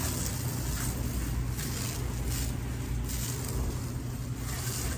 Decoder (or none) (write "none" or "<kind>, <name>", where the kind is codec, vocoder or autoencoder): none